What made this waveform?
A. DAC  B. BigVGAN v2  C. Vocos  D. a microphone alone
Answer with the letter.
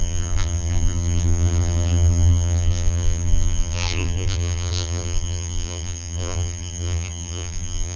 B